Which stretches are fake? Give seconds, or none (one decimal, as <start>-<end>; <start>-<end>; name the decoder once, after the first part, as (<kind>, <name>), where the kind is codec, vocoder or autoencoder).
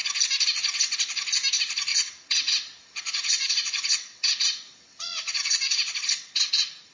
1.9-6.0 (vocoder, WaveNeXt)